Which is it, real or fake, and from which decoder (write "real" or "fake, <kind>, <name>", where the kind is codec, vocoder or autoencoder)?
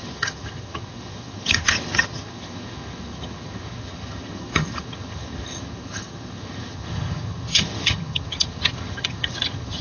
fake, vocoder, HiFi-GAN